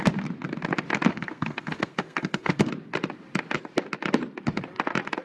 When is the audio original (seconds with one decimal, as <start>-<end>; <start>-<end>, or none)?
0.0-1.1; 2.7-5.2